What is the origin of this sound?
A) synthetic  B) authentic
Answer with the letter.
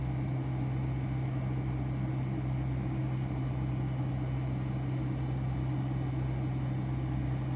B